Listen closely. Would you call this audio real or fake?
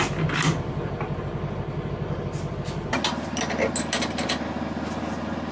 real